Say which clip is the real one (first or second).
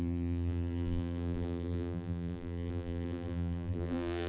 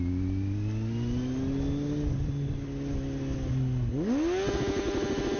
second